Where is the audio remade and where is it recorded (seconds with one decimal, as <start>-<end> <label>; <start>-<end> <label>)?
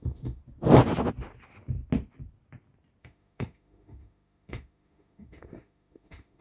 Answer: 0.0-0.4 remade; 0.4-3.0 recorded; 3.0-6.4 remade